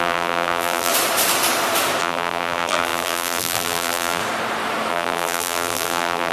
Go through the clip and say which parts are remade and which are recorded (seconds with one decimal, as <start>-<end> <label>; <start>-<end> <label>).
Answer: 0.0-0.9 remade; 0.9-2.0 recorded; 2.0-4.2 remade; 4.2-4.9 recorded; 4.9-6.3 remade